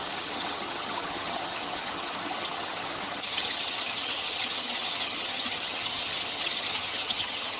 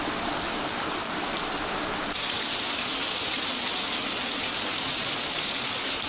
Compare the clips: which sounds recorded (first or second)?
second